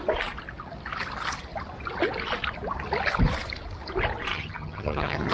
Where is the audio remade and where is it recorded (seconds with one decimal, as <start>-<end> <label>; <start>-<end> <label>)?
0.0-4.3 recorded; 4.3-5.3 remade